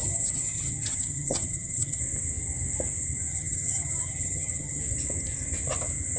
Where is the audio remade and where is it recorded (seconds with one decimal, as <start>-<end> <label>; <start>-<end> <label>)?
0.0-2.0 remade; 2.0-3.3 recorded; 3.3-4.8 remade; 4.8-6.2 recorded